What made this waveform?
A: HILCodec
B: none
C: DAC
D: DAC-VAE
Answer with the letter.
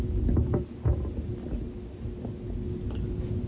B